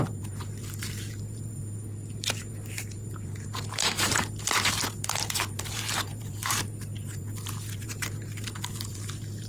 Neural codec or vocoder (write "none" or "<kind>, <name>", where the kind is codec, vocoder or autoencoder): vocoder, BigVGAN v2